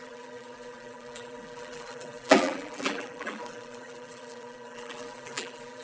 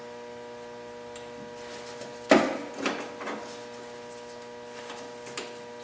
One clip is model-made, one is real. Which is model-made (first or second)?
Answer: first